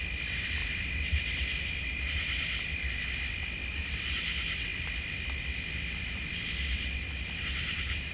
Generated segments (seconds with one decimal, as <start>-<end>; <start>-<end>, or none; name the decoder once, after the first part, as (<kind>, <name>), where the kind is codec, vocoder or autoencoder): 0.6-2.9 (vocoder, BigVGAN v2); 4.7-8.1

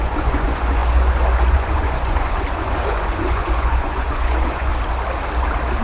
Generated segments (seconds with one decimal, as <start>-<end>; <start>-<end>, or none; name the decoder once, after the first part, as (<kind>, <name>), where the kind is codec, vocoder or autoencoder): 0.0-4.7 (vocoder, Vocos)

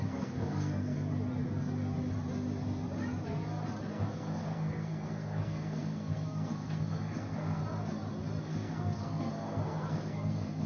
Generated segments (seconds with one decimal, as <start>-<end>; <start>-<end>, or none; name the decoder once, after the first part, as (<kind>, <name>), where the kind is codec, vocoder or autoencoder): 0.0-1.1 (codec, SNAC); 3.9-7.6; 8.4-10.7

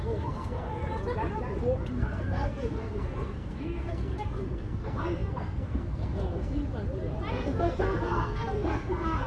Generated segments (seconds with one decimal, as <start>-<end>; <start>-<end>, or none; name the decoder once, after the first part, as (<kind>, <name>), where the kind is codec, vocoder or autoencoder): 0.0-0.8 (codec, SNAC); 1.9-6.6; 7.3-9.3

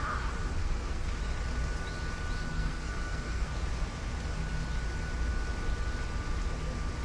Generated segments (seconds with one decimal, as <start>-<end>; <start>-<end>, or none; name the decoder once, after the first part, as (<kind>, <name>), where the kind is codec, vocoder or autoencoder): 0.6-1.1 (codec, SNAC); 2.5-3.5